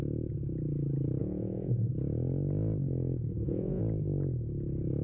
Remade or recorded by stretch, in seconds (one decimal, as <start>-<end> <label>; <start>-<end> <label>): 0.0-1.2 recorded; 1.2-1.9 remade; 1.9-3.3 recorded; 3.3-3.8 remade; 3.8-5.0 recorded